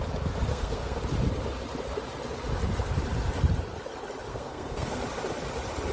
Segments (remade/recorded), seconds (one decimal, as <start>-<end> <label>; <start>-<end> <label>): 0.0-0.5 recorded; 0.5-1.0 remade; 1.0-4.3 recorded; 4.3-5.0 remade; 5.0-5.9 recorded